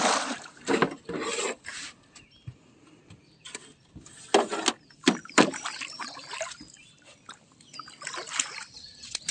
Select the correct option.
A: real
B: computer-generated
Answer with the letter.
A